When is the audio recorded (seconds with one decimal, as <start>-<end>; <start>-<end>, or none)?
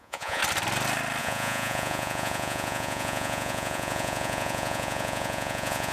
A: 0.4-1.2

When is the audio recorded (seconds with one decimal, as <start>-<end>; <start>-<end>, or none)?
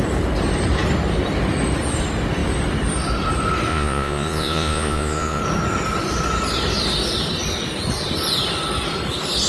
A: 0.0-3.7; 5.4-9.5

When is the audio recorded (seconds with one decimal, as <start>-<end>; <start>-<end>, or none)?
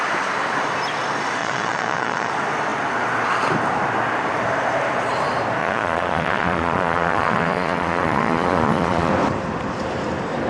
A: 0.0-1.4; 2.3-5.6; 9.1-10.5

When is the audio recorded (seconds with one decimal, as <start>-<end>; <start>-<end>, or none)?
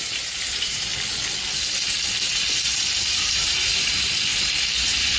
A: 0.9-3.2; 4.3-4.8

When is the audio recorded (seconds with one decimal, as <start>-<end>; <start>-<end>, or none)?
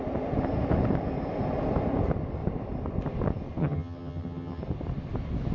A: 0.0-3.6; 4.6-5.5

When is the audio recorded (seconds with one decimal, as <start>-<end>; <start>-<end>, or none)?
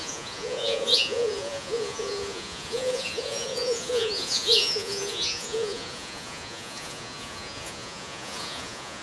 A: none